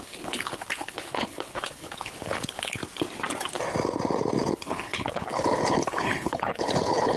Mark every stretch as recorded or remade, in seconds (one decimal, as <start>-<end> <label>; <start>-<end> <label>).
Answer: 0.0-2.8 remade; 2.8-4.5 recorded; 4.5-7.2 remade